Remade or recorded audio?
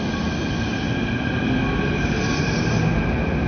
recorded